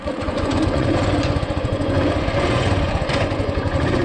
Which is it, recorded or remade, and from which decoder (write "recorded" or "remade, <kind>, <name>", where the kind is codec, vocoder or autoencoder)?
remade, vocoder, Vocos